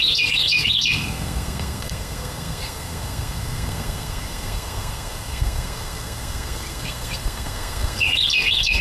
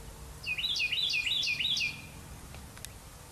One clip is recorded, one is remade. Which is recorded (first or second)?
second